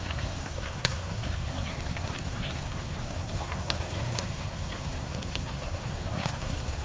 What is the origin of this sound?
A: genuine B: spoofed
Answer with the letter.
B